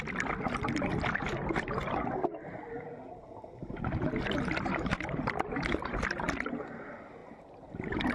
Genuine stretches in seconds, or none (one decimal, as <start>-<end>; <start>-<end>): 0.0-8.1